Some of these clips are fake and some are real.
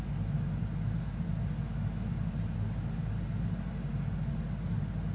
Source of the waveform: real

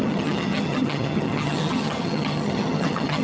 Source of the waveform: fake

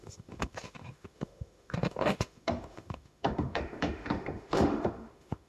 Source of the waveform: fake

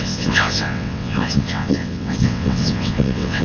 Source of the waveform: fake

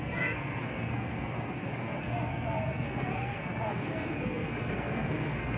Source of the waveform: fake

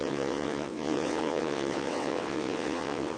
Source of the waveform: fake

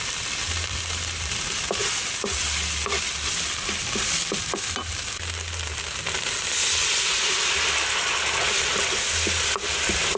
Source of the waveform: real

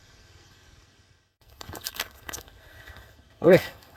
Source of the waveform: fake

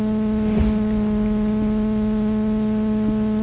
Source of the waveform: real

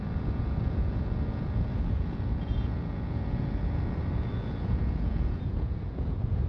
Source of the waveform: fake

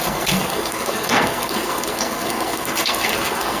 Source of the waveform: fake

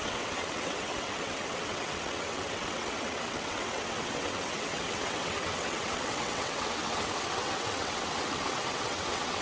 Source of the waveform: fake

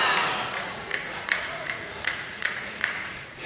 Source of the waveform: fake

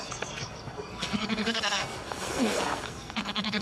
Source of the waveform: fake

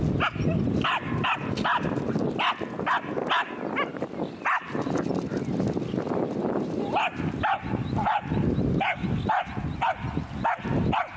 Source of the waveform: real